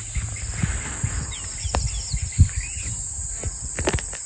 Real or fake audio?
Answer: real